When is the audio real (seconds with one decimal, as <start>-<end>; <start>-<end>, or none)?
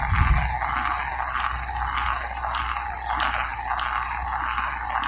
0.0-5.1